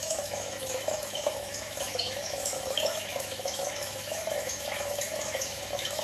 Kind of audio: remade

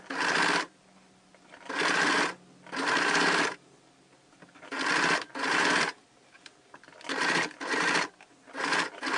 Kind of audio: recorded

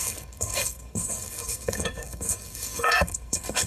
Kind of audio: remade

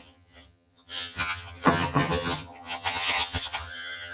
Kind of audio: remade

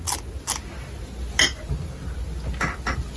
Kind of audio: recorded